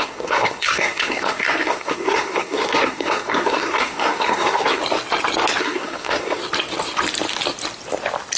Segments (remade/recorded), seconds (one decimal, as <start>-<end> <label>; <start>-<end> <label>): 0.0-4.8 remade; 4.8-5.6 recorded; 5.6-6.4 remade; 6.4-8.4 recorded